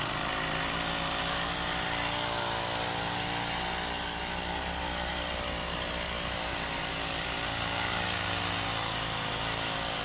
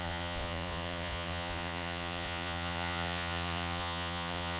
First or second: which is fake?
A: second